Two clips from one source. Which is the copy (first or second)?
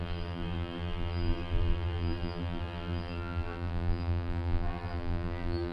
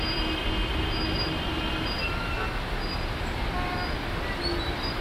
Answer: first